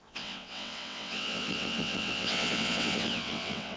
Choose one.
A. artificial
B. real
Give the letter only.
A